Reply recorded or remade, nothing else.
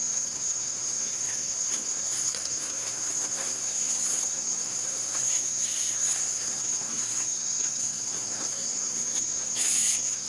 remade